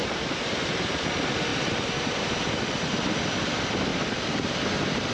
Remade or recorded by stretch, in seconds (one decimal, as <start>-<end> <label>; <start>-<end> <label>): 0.0-0.9 remade; 0.9-1.5 recorded; 1.5-2.6 remade; 2.6-3.9 recorded; 3.9-4.6 remade; 4.6-5.1 recorded